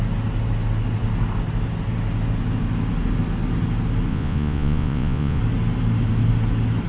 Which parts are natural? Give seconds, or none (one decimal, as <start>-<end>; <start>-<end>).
0.0-4.1; 5.4-6.9